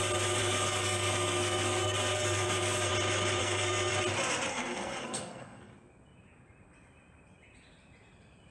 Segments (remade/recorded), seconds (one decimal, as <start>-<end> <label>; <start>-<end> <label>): 0.0-0.4 recorded; 0.4-2.9 remade; 2.9-3.4 recorded; 3.4-3.9 remade; 3.9-4.5 recorded; 4.5-5.7 remade; 5.7-8.5 recorded